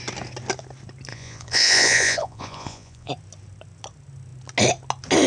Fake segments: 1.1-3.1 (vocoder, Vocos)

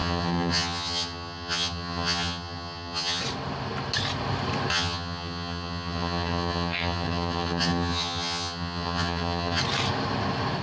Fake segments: 0.0-3.2 (vocoder, HiFi-GAN); 4.7-9.6

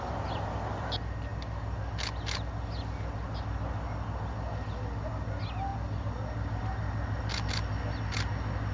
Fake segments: none